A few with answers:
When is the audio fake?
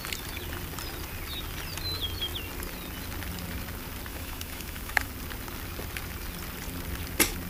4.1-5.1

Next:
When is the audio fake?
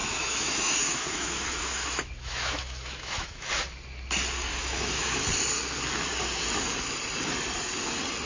0.0-3.5; 4.5-5.2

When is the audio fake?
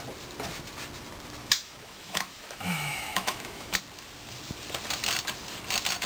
1.4-3.8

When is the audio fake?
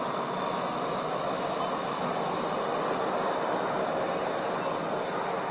0.9-1.5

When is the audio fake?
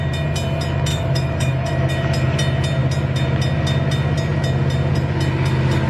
0.9-1.9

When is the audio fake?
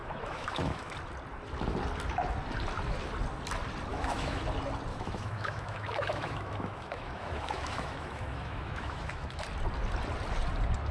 0.0-0.9; 3.9-4.4; 4.9-9.4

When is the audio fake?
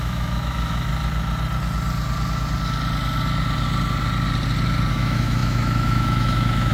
0.0-0.9; 4.9-6.7